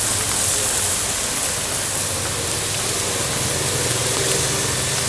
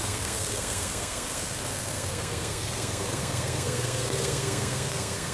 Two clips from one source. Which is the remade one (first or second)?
second